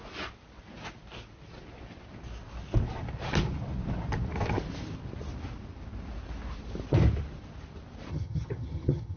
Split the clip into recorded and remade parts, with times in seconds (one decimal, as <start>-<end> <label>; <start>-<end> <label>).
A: 0.0-8.1 recorded; 8.1-9.2 remade